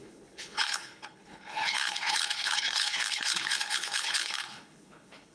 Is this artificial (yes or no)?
yes